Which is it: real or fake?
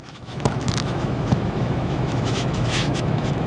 fake